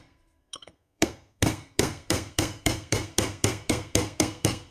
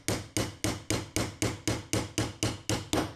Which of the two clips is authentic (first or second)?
second